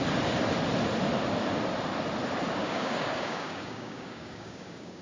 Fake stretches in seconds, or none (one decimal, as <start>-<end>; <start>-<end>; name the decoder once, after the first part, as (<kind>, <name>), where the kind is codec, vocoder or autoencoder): 2.6-5.0 (codec, DAC)